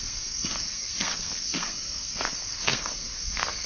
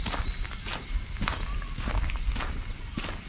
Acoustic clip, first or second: second